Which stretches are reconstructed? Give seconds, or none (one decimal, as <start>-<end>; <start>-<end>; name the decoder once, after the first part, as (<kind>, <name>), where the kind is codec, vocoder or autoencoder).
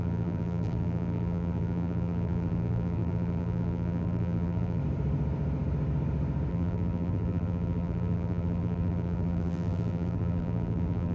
0.0-4.8 (vocoder, BigVGAN v2); 6.5-11.1